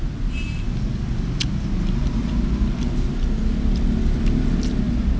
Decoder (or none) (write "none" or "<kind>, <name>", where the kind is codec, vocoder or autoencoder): none